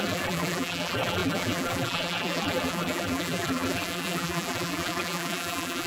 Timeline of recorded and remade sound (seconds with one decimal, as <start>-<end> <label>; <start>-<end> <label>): 0.0-5.9 remade